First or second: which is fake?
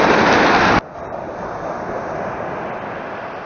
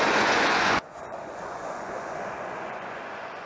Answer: second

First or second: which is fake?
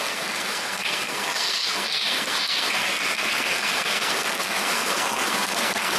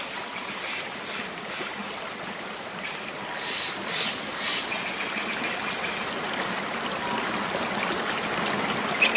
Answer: first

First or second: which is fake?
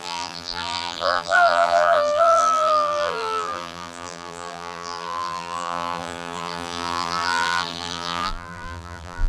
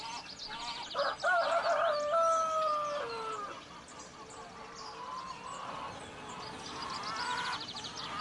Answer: first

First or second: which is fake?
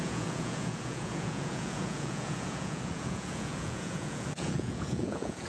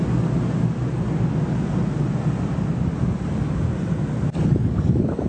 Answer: first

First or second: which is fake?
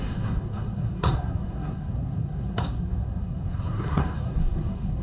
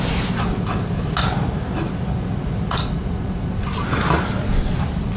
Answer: first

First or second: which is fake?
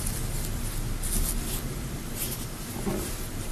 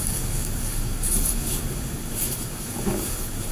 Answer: second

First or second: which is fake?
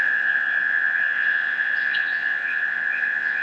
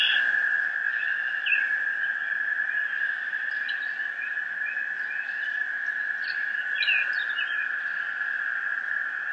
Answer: first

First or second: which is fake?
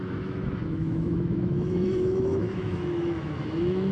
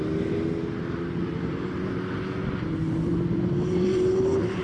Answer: first